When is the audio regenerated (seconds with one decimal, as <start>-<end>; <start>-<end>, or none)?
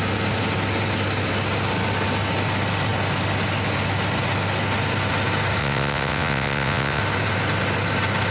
5.6-7.0